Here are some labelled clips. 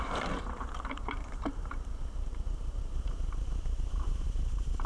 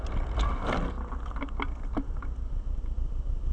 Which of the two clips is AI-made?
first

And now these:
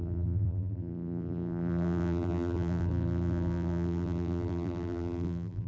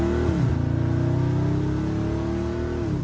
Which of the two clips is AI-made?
first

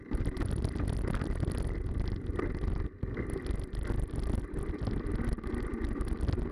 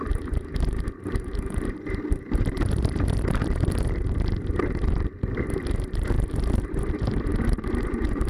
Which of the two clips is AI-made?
second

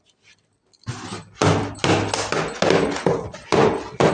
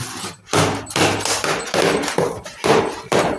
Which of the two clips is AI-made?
second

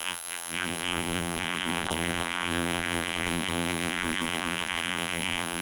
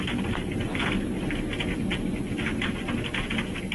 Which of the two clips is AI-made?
first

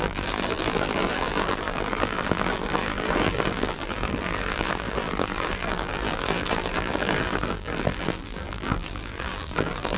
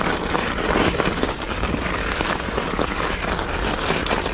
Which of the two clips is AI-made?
first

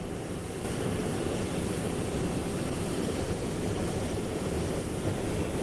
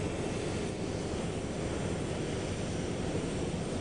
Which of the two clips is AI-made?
first